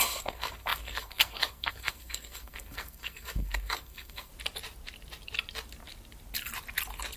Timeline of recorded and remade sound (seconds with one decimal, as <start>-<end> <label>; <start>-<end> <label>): 0.0-4.3 remade; 4.3-7.2 recorded